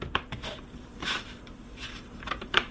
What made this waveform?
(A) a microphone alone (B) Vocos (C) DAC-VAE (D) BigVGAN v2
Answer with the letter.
D